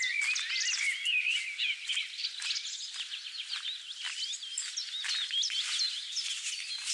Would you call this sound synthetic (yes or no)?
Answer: no